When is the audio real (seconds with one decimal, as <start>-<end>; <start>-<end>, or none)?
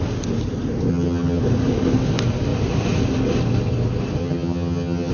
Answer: 0.0-0.9; 1.4-4.2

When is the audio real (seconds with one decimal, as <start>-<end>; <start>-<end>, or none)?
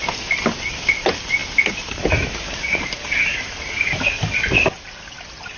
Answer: 0.0-5.6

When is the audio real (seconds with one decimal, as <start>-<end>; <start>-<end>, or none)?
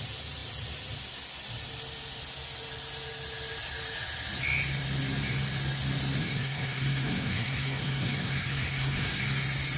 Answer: 0.0-6.2; 9.2-9.8